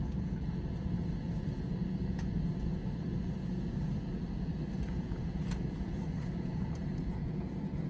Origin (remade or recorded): remade